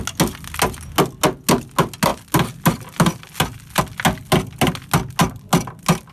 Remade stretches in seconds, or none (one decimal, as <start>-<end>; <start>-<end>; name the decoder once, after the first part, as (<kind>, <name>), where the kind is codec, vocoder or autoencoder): none